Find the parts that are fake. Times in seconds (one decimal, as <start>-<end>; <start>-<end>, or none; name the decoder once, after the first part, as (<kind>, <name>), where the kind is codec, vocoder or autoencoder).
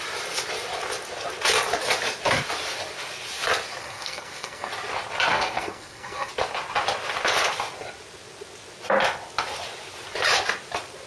3.8-4.7 (codec, SNAC); 5.3-6.3